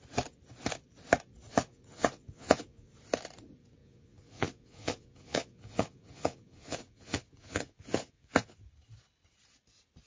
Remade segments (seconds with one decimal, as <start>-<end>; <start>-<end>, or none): 1.7-2.9; 3.8-8.6